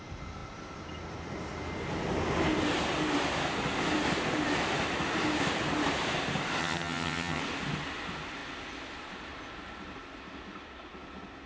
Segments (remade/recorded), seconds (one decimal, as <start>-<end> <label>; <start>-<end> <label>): 0.0-6.6 recorded; 6.6-7.4 remade; 7.4-11.5 recorded